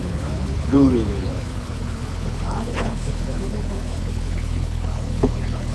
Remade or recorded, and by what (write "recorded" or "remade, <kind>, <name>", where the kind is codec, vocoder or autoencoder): remade, codec, HILCodec